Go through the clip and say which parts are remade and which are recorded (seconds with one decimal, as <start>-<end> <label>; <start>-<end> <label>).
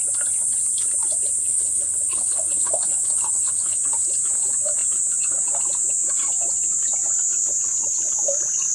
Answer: 0.0-1.4 recorded; 1.4-3.8 remade; 3.8-8.7 recorded